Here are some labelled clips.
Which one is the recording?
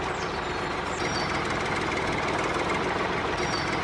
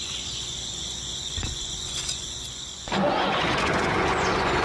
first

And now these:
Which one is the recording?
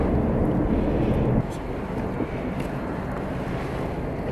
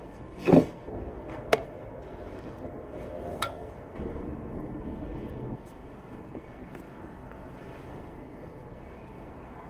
first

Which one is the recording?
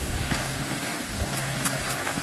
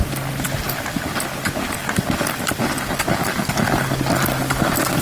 second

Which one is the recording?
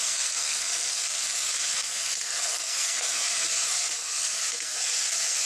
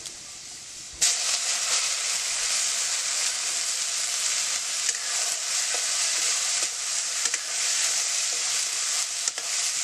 second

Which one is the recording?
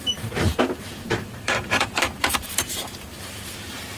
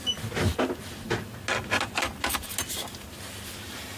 second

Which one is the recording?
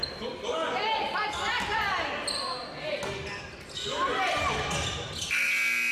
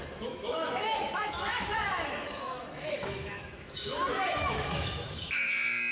first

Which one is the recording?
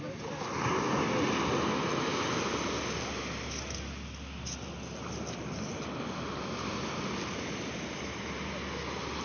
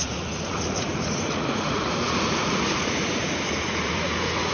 first